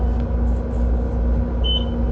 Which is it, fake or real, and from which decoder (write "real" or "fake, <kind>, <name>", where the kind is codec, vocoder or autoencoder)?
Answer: real